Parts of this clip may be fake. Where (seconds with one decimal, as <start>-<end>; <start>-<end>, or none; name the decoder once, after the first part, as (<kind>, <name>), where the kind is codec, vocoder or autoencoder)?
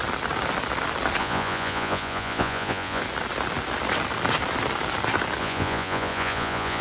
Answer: 1.2-3.0 (vocoder, Vocos); 5.4-6.8